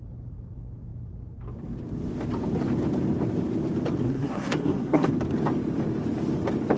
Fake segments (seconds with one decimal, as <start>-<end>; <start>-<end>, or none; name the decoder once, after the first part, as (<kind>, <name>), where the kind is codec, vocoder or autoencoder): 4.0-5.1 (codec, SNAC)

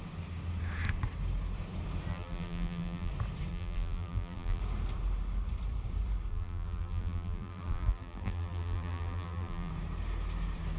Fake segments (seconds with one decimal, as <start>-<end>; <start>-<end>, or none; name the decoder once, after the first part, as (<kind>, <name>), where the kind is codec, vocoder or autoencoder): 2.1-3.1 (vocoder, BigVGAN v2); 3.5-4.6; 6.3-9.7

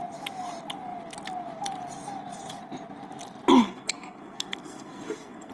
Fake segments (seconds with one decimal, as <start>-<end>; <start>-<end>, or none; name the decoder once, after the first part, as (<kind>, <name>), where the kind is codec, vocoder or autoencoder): 3.6-5.5 (codec, SNAC)